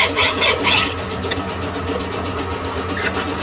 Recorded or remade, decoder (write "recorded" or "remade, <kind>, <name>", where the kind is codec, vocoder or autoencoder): recorded